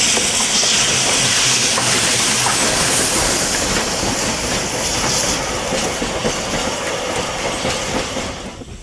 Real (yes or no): yes